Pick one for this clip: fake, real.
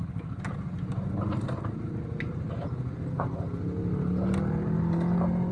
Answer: real